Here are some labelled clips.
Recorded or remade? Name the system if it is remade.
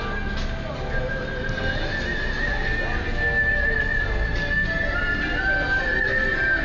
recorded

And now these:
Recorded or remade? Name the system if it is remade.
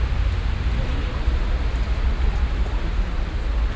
recorded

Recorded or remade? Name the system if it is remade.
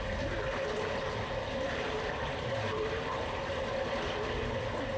recorded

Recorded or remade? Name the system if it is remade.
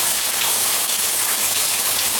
remade, codec, DAC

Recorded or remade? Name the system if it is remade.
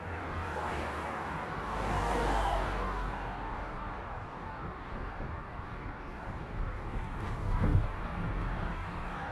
remade, codec, DAC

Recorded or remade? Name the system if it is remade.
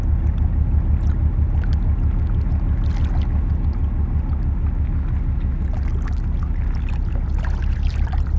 recorded